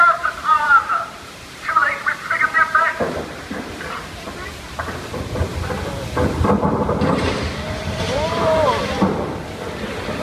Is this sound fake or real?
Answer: fake